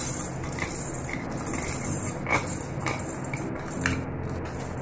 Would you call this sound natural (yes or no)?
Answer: yes